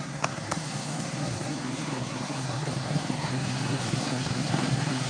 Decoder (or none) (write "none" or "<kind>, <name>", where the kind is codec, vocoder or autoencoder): codec, SNAC